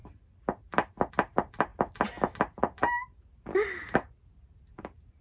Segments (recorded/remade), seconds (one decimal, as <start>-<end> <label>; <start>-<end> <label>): 0.0-5.2 recorded